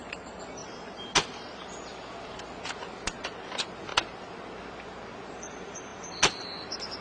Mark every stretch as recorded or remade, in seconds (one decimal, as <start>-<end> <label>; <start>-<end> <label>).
0.0-7.0 recorded